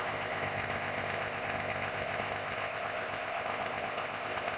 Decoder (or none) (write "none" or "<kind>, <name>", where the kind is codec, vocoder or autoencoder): codec, ZipCodec